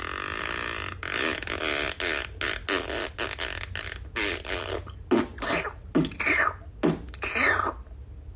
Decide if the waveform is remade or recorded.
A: recorded